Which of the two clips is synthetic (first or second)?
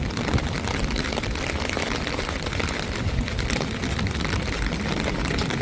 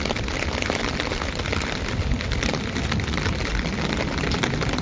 second